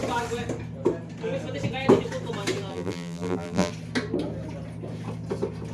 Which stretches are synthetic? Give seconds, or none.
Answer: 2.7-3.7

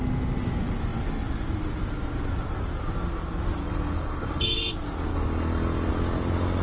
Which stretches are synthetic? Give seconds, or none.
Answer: 3.6-4.6; 5.1-5.9

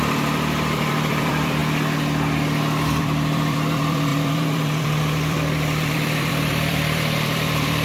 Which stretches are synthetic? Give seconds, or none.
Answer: 0.0-1.6; 3.0-7.8

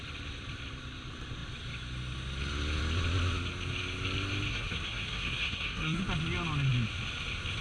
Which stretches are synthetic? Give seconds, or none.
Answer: 4.5-6.0

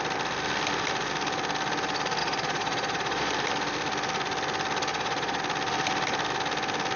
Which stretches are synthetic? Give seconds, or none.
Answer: 2.2-3.3; 4.9-5.4

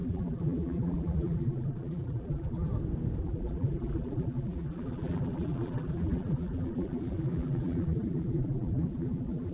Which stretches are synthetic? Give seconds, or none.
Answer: 0.0-2.7; 3.2-9.5

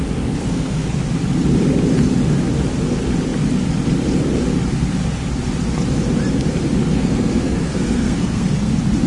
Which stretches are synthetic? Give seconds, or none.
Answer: 0.4-1.0; 6.9-8.7